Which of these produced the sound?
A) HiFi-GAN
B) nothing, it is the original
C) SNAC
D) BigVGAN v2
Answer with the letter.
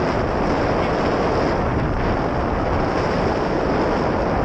B